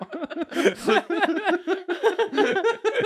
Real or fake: fake